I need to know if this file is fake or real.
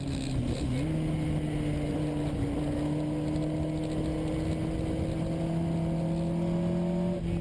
real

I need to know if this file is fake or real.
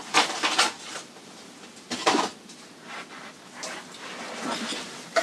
real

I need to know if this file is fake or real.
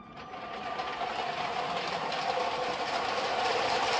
real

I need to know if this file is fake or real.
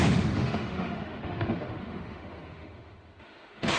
fake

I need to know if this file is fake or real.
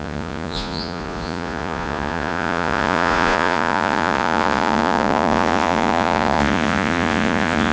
fake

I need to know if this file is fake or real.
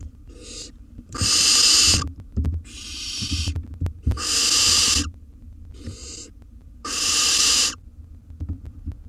fake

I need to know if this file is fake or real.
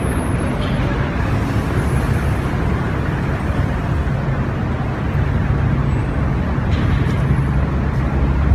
real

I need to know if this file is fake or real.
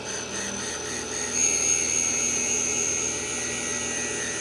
real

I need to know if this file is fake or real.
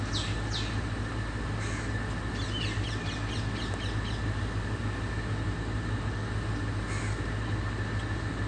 real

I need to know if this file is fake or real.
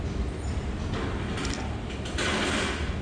real